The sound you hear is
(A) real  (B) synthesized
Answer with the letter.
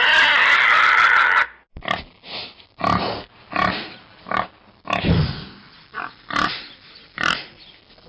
A